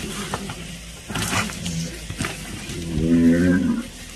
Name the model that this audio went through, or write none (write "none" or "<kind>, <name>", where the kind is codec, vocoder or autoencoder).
none